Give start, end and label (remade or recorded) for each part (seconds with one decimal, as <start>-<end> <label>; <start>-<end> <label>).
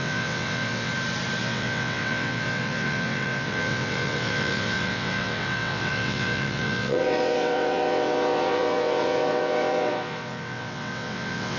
0.0-0.9 remade; 0.9-1.4 recorded; 1.4-11.6 remade